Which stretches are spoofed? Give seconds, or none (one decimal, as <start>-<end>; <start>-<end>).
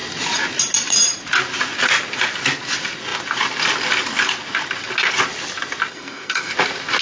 5.9-6.5